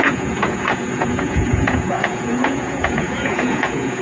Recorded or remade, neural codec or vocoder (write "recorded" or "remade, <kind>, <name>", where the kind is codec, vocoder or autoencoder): remade, vocoder, Vocos